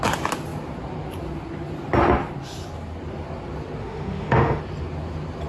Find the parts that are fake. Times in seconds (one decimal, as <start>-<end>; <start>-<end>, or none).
3.8-4.6